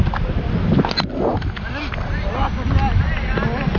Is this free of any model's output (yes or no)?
yes